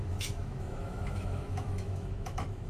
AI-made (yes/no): yes